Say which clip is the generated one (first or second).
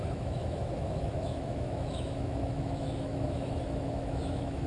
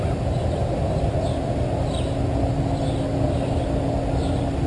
first